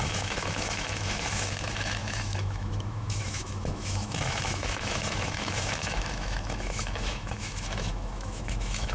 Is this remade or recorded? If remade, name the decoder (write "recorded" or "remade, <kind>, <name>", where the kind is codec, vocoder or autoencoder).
remade, autoencoder, DAC-VAE